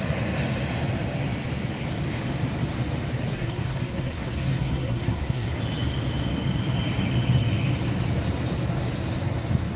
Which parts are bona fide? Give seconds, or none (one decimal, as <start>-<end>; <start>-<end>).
0.0-3.2; 5.6-9.8